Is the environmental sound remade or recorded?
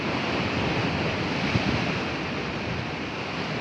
recorded